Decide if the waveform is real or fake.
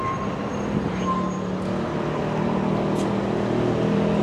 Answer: real